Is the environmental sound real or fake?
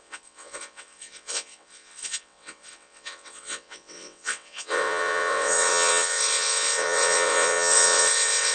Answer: fake